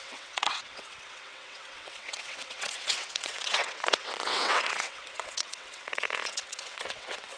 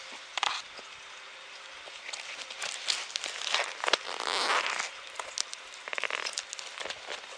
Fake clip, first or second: first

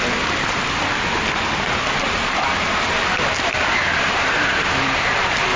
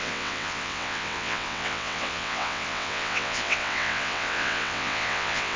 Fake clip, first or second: second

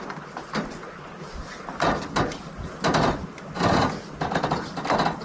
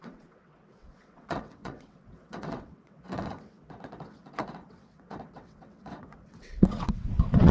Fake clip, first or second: second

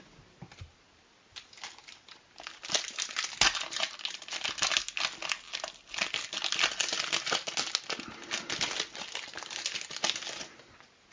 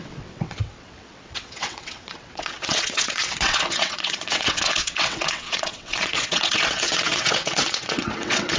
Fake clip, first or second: second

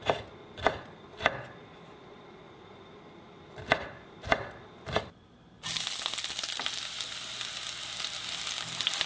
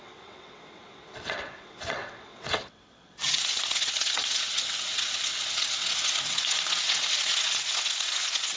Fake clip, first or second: second